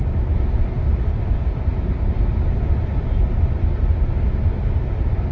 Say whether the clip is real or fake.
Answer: real